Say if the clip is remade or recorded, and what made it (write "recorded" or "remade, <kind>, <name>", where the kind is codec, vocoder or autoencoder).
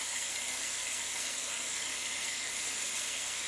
remade, codec, SNAC